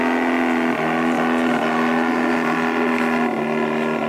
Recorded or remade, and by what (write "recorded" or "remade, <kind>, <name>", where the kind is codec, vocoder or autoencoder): recorded